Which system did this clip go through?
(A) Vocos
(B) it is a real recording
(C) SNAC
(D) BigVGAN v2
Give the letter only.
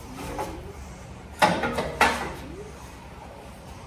D